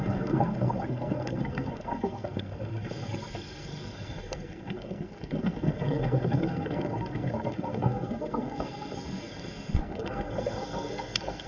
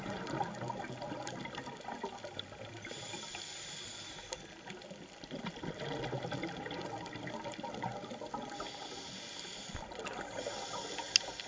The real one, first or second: second